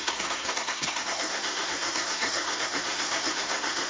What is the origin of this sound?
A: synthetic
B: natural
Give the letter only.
A